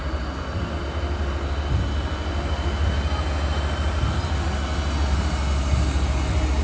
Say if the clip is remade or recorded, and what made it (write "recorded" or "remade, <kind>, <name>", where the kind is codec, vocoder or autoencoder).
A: recorded